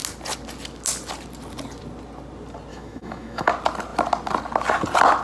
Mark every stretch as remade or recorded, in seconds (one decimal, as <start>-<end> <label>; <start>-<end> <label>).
0.0-2.7 recorded; 2.7-3.5 remade; 3.5-5.2 recorded